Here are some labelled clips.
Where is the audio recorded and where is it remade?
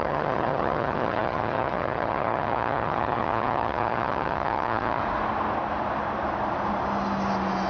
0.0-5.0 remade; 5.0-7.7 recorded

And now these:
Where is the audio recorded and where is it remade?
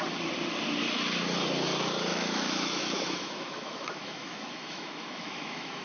0.0-2.1 recorded; 2.1-5.8 remade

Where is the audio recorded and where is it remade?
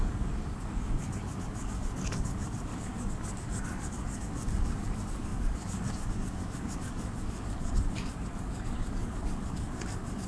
0.0-10.3 remade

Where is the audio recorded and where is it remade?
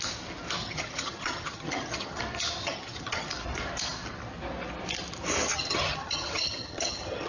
0.0-0.6 recorded; 0.6-2.2 remade; 2.2-2.6 recorded; 2.6-3.3 remade; 3.3-5.4 recorded; 5.4-7.3 remade